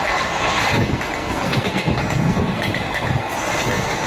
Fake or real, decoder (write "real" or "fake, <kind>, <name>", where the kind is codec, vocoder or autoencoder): fake, codec, SNAC